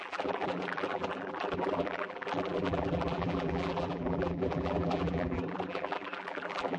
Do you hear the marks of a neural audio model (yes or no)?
yes